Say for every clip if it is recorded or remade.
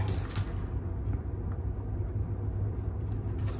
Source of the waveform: recorded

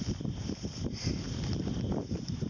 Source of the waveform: recorded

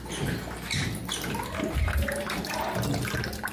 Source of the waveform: recorded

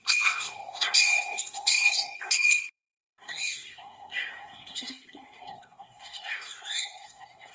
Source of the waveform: remade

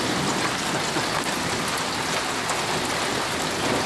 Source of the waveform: recorded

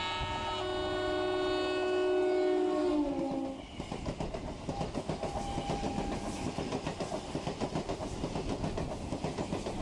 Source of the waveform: recorded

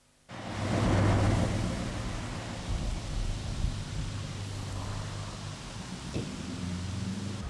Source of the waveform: recorded